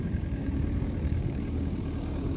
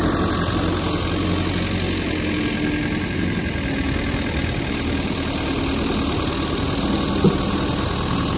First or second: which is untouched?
second